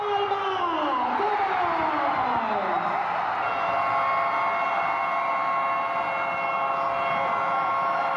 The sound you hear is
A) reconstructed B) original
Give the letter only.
B